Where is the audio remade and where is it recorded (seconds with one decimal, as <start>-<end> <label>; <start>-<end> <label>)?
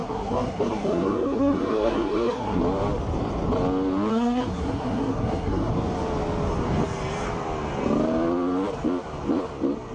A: 0.0-2.6 remade; 2.6-4.1 recorded; 4.1-5.7 remade; 5.7-9.9 recorded